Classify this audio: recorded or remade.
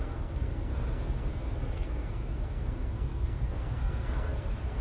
remade